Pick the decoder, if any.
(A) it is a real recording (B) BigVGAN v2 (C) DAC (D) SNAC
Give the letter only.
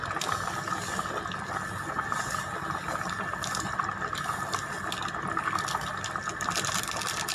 A